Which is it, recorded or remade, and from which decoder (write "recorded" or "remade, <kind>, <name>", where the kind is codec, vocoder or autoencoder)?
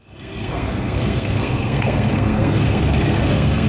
remade, codec, SNAC